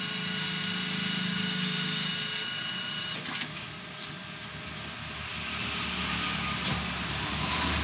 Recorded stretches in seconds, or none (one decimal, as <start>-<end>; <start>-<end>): 0.0-1.3; 2.1-7.8